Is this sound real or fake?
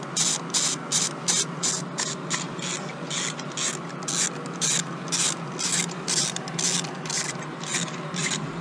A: real